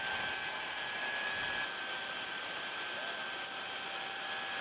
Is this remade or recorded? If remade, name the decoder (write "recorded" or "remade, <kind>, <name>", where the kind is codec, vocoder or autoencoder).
recorded